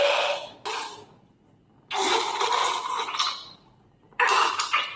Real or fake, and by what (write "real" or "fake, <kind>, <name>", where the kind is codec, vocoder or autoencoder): real